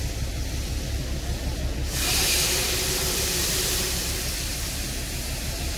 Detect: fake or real real